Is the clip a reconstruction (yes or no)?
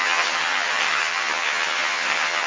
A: yes